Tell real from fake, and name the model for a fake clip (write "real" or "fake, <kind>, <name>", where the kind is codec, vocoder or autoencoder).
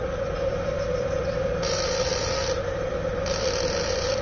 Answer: fake, vocoder, BigVGAN v2